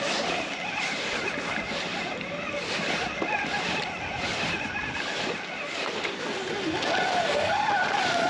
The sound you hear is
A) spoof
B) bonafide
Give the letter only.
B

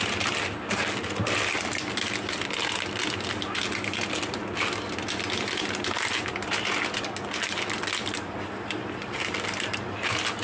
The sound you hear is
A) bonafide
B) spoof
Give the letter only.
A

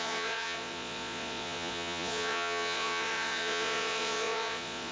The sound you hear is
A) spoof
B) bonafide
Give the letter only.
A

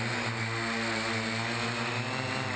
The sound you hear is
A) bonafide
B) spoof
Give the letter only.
A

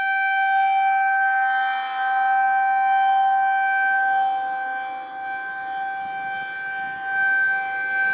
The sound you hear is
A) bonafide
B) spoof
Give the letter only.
A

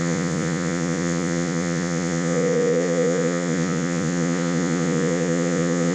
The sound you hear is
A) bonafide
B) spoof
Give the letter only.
B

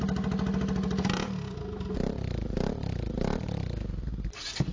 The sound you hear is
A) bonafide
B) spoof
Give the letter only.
A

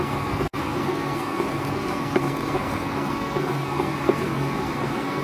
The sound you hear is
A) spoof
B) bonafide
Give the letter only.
A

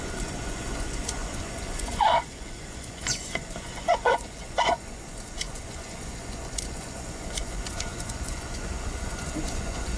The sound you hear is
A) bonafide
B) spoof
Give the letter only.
B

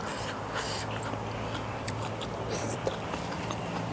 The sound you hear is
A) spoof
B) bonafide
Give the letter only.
A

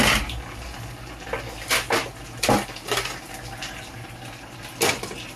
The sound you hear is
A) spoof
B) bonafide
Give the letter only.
B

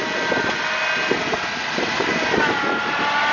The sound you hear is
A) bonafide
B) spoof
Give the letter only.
A